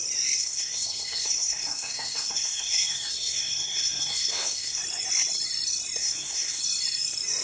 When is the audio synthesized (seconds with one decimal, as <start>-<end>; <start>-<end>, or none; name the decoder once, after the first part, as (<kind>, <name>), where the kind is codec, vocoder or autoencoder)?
0.4-4.8 (codec, SNAC); 6.0-6.6